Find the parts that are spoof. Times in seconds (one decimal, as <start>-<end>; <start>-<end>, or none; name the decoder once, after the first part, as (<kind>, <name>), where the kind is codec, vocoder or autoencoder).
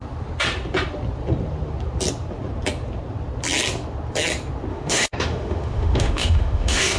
4.7-7.0 (autoencoder, DAC-VAE)